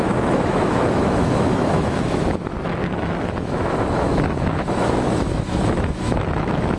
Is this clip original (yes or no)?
no